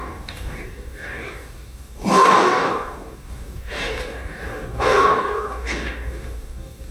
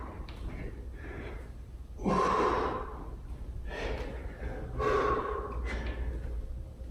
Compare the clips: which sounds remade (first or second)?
first